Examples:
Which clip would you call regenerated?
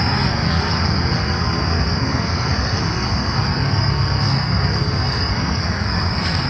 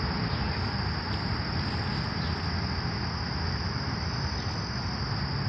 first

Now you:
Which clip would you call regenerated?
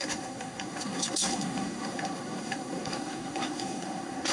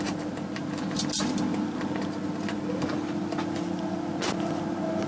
first